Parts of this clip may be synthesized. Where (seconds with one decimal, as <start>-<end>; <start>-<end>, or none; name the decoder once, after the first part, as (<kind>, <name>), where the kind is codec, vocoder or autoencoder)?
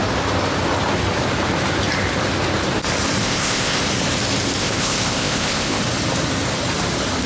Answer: 3.2-3.8 (codec, ZipCodec); 4.6-5.8